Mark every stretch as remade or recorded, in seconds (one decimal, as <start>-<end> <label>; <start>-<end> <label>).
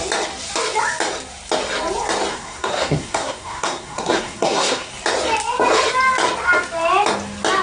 0.0-2.3 recorded; 2.3-4.9 remade; 4.9-7.6 recorded